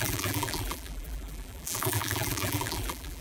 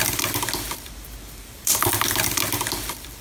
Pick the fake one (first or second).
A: first